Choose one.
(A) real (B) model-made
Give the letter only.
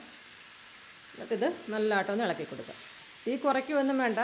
A